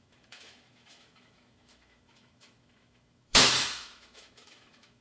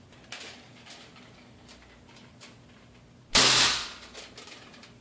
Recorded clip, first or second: second